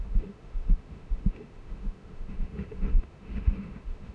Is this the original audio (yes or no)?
no